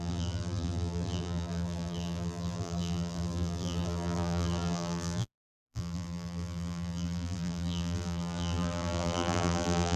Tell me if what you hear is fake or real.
fake